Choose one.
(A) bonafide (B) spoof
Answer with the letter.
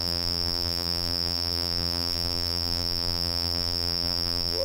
B